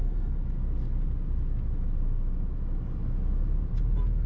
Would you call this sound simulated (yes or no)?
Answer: no